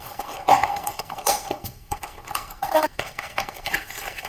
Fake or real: fake